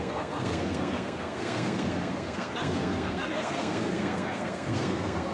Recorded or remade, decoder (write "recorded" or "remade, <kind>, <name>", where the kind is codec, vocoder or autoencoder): remade, codec, SNAC